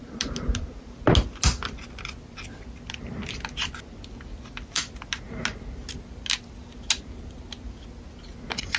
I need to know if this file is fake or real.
real